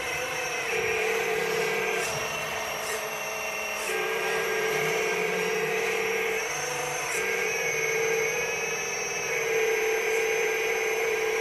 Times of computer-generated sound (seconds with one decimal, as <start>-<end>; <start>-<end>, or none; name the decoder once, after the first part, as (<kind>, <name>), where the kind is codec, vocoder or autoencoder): 0.0-8.4 (vocoder, BigVGAN v2); 8.9-11.4